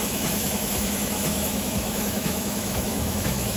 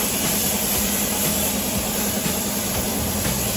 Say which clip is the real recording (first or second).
second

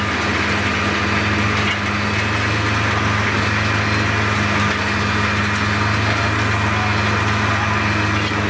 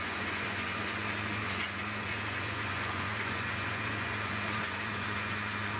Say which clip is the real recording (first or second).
first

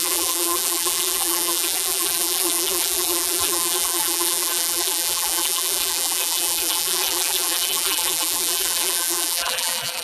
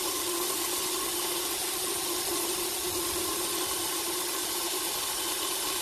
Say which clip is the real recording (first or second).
second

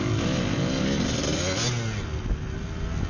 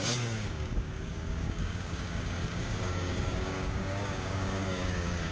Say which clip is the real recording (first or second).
first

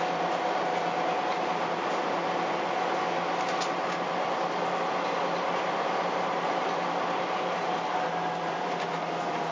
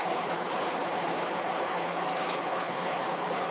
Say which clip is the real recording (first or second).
first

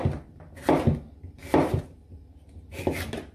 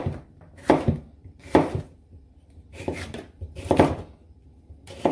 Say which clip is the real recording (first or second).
first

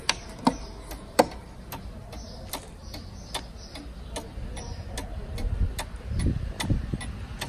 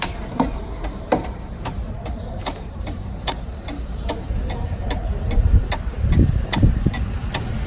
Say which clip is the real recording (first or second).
first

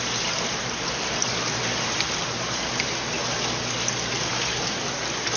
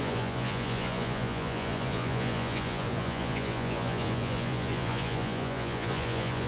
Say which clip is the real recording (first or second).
first